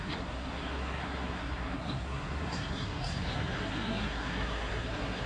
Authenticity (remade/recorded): remade